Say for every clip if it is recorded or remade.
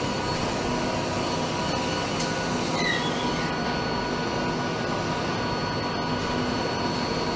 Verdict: recorded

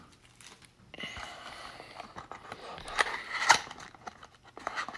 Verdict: recorded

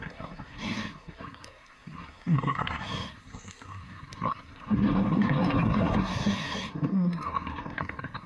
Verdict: remade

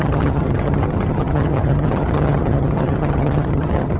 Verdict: remade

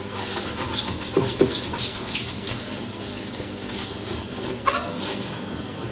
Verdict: remade